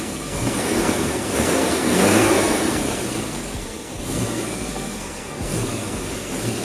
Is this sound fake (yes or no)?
yes